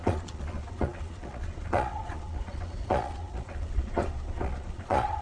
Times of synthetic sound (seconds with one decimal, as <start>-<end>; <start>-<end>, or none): 0.0-5.2

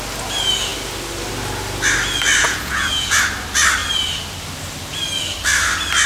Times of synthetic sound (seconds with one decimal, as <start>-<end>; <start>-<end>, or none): 2.4-3.2

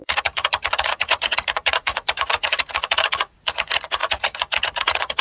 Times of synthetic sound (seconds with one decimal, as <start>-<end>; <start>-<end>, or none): 0.0-5.2

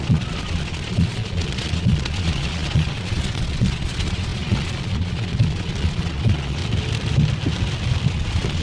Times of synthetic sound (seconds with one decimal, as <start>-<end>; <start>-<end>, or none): 0.0-6.6; 8.1-8.6

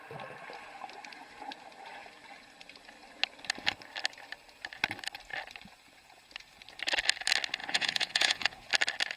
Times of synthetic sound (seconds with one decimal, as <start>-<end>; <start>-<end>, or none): 7.6-8.7

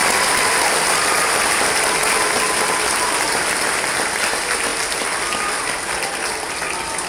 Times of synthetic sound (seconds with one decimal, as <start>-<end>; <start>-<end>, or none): none